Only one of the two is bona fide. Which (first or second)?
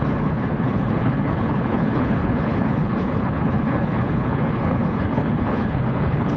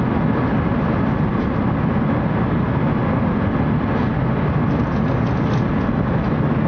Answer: second